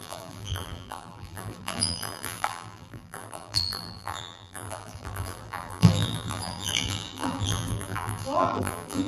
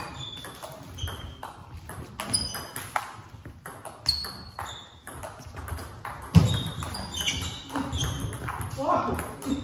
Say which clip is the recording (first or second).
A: second